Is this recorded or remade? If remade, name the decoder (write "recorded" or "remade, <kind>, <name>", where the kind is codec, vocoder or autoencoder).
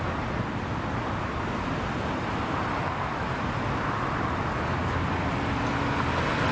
recorded